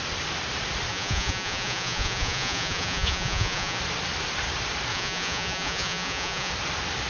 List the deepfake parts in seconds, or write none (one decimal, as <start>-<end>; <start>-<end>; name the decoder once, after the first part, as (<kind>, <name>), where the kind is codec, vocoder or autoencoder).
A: 0.9-3.8 (vocoder, Vocos); 4.9-6.5